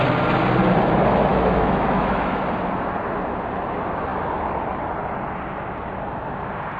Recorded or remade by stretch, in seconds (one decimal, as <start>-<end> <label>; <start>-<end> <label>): 0.0-1.3 recorded; 1.3-2.4 remade; 2.4-6.8 recorded